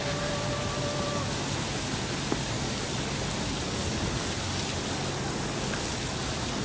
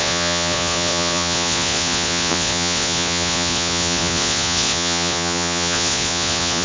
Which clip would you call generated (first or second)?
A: second